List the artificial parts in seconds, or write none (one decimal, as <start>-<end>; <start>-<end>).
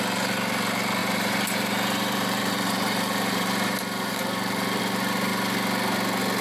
1.0-4.8